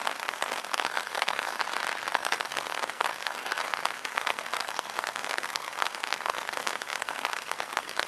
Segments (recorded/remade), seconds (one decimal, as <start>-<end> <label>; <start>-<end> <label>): 0.0-1.6 remade; 1.6-2.1 recorded; 2.1-8.1 remade